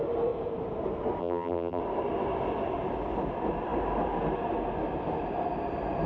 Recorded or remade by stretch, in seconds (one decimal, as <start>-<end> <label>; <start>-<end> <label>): 0.0-1.2 recorded; 1.2-1.8 remade; 1.8-6.1 recorded